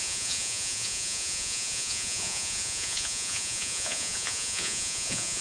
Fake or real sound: fake